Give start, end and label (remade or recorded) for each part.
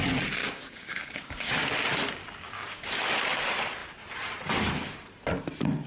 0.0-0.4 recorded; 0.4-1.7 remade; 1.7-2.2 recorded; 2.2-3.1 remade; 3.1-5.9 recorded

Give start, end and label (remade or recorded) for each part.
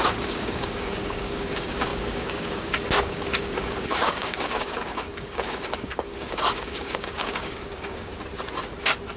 0.0-8.1 remade; 8.1-9.2 recorded